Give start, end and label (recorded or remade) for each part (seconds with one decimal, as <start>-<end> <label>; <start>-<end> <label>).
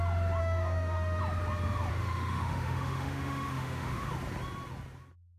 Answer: 0.0-0.4 recorded; 0.4-1.2 remade; 1.2-1.9 recorded; 1.9-4.1 remade; 4.1-5.4 recorded